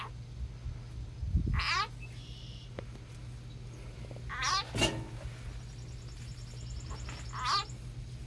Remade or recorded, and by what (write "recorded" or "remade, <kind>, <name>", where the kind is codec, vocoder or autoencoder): recorded